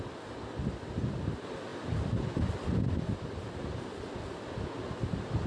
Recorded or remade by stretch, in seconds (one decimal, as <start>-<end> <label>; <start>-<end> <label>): 0.0-5.5 recorded